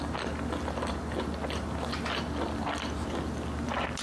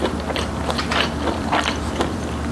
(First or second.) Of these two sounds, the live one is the first